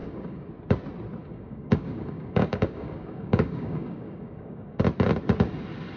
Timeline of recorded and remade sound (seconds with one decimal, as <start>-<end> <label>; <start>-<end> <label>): 0.0-0.5 remade; 0.5-1.2 recorded; 1.2-4.8 remade; 4.8-6.0 recorded